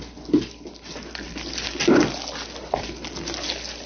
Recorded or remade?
recorded